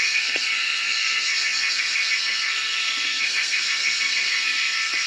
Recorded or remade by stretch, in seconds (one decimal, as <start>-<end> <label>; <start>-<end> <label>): 0.0-5.1 remade